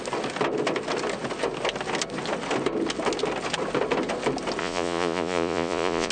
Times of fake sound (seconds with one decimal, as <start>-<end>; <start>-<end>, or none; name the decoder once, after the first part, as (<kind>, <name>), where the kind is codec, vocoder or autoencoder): 4.6-6.1 (vocoder, Vocos)